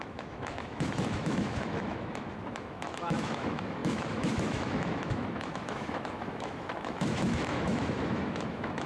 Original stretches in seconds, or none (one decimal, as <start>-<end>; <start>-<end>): none